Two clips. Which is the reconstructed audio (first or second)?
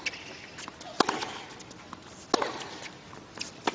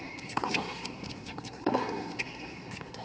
second